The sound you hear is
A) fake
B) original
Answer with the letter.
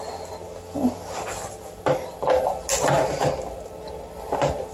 B